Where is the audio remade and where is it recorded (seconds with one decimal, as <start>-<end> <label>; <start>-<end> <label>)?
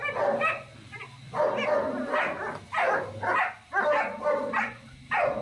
0.0-5.4 recorded